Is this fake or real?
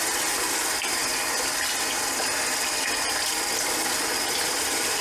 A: real